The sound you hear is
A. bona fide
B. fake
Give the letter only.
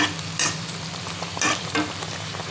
B